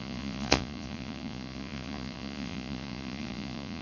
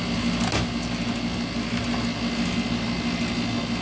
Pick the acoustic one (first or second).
second